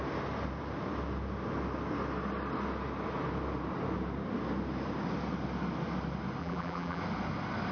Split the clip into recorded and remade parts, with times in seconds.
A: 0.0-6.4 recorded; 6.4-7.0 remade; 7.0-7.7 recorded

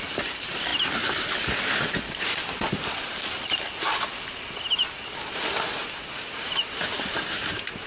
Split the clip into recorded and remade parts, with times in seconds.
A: 0.0-7.9 recorded